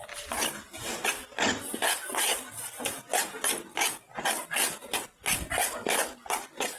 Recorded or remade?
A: recorded